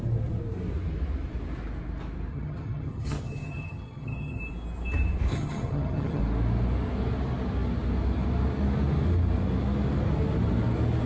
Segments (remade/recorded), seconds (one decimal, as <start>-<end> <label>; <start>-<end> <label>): 0.0-2.3 recorded; 2.3-4.4 remade; 4.4-5.3 recorded; 5.3-6.2 remade; 6.2-11.1 recorded